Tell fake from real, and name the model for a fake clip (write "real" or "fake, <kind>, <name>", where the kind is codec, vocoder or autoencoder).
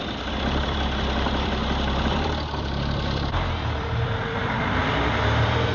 fake, vocoder, BigVGAN v2